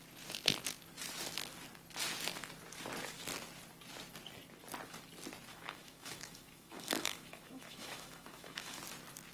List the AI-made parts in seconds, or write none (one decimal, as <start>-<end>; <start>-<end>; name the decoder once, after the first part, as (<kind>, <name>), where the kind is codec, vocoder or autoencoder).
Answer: 5.5-8.8 (autoencoder, DAC-VAE)